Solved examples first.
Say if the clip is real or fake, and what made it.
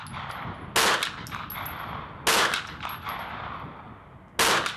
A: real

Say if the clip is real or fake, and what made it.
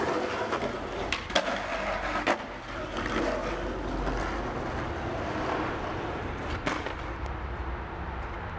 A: real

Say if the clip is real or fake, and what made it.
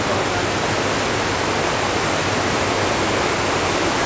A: real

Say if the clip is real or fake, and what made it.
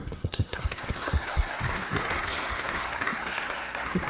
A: fake, codec, SNAC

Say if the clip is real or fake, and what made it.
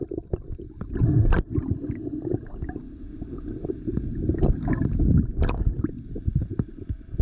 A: real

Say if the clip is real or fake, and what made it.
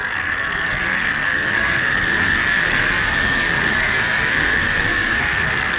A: fake, codec, SNAC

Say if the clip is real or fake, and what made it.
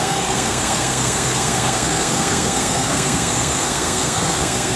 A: fake, codec, SNAC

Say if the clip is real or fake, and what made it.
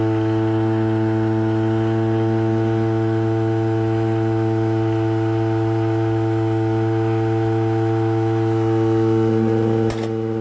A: real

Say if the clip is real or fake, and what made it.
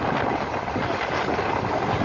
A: real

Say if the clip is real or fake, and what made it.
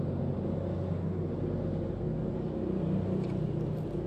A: real